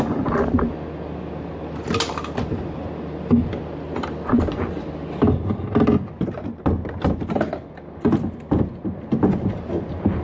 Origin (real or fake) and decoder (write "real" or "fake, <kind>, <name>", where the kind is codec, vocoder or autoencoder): real